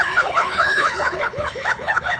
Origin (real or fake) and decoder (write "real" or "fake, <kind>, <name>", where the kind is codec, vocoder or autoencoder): fake, codec, HILCodec